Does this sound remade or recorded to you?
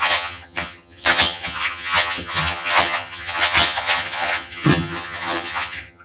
remade